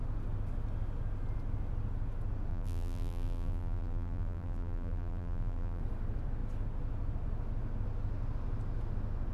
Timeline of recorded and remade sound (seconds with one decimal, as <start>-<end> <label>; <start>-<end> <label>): 0.0-2.5 recorded; 2.5-5.8 remade; 5.8-9.3 recorded